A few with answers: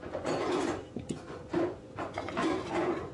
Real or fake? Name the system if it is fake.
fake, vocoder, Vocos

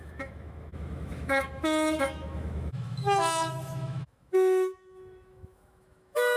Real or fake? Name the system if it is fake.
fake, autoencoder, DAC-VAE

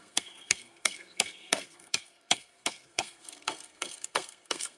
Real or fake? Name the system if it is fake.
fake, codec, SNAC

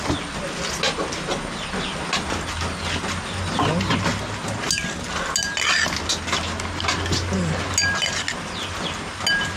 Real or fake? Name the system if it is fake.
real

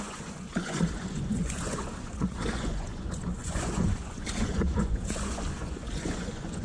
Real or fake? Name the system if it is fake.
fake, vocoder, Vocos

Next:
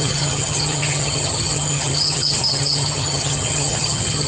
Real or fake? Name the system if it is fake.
fake, vocoder, HiFi-GAN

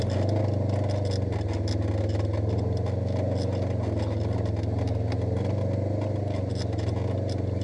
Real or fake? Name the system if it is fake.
real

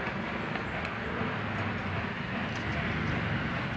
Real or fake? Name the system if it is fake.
real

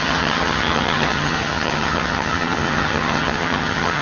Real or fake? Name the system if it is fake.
fake, vocoder, HiFi-GAN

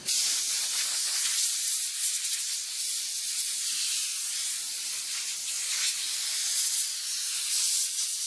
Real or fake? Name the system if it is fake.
real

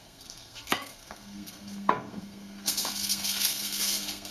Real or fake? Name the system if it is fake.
fake, codec, SNAC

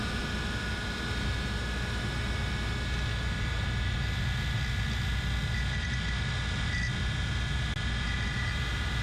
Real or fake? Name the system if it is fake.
real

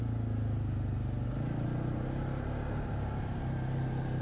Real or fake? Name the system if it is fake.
real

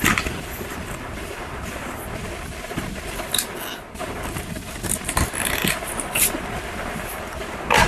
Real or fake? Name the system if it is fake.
real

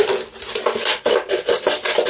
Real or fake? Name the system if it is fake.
real